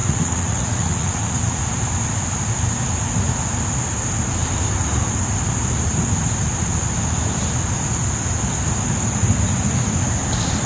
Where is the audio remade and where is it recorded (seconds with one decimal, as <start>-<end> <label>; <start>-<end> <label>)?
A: 0.0-1.6 remade; 1.6-10.7 recorded